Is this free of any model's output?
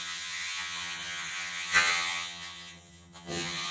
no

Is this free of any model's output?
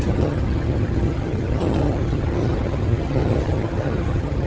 no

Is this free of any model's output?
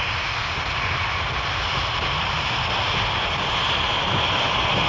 yes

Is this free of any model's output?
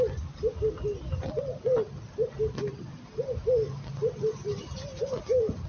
yes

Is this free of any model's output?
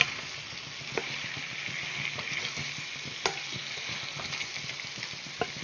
yes